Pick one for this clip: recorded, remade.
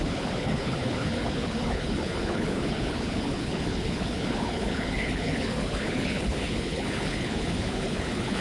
remade